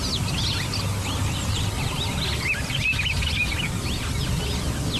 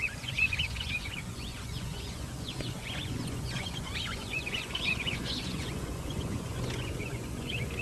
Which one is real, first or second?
first